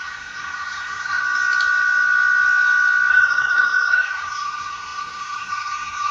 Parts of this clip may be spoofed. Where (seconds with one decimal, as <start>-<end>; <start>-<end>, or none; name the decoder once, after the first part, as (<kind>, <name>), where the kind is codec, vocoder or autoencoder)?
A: 0.0-1.2 (codec, SNAC); 3.1-6.1